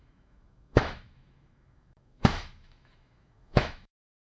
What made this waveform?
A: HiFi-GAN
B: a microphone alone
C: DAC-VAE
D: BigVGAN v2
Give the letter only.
C